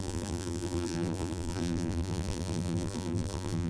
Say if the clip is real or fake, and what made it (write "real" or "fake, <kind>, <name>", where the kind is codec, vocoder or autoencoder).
fake, vocoder, BigVGAN v2